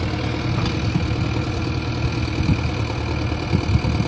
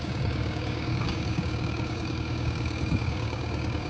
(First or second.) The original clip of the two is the first